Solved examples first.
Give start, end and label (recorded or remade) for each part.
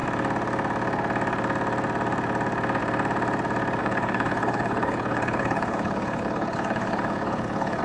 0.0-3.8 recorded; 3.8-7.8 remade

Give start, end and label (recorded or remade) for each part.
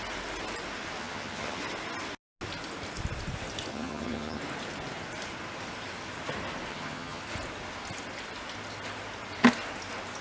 0.0-1.0 recorded; 1.0-1.6 remade; 1.6-3.7 recorded; 3.7-4.4 remade; 4.4-6.7 recorded; 6.7-7.2 remade; 7.2-10.2 recorded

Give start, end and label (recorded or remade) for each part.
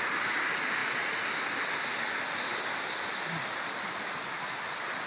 0.0-5.1 recorded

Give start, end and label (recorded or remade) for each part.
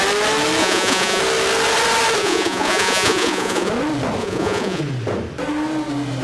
0.0-0.6 recorded; 0.6-1.2 remade; 1.2-2.2 recorded; 2.2-3.7 remade; 3.7-4.2 recorded; 4.2-4.8 remade; 4.8-6.2 recorded